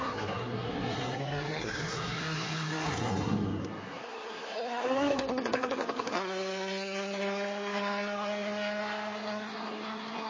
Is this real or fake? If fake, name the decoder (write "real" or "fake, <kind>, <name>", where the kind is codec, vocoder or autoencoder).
fake, codec, SNAC